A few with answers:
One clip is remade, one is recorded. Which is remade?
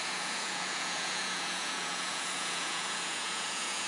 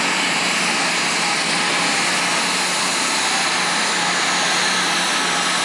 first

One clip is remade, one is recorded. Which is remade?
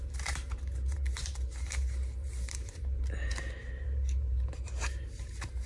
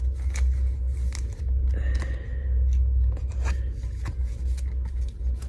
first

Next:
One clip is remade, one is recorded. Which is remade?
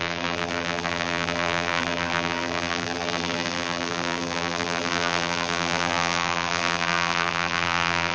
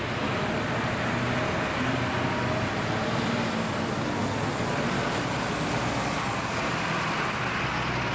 first